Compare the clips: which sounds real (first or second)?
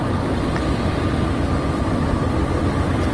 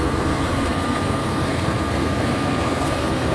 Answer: first